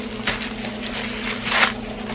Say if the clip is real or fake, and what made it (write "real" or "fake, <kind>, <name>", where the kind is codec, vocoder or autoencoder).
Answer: real